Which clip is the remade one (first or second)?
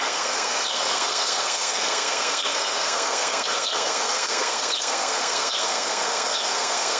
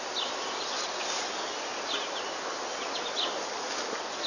first